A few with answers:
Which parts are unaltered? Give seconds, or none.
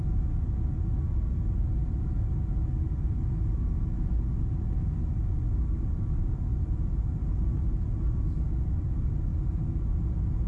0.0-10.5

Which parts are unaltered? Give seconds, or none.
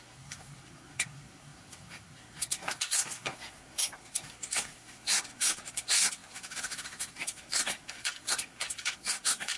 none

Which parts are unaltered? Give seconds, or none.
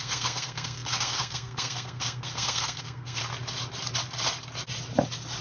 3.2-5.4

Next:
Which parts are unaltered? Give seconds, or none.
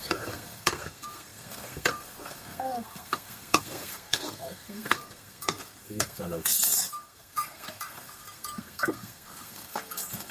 none